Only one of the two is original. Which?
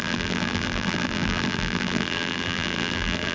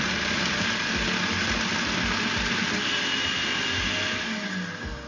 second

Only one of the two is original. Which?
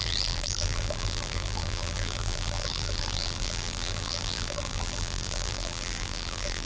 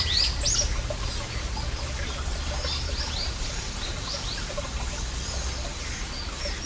second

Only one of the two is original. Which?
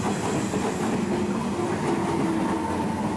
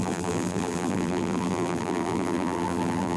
first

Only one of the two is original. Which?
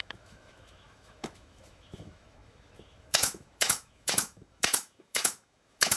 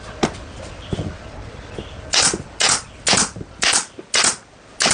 second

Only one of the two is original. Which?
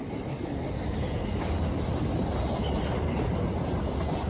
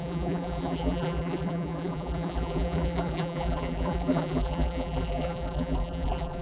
first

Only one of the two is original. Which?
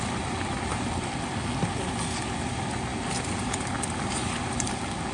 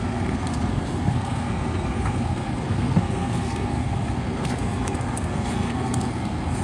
first